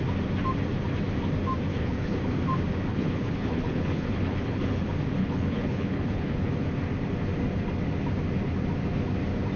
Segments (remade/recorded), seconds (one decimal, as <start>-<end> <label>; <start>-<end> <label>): 0.0-1.7 recorded; 1.7-2.2 remade; 2.2-2.9 recorded; 2.9-4.8 remade; 4.8-5.2 recorded; 5.2-6.5 remade; 6.5-9.6 recorded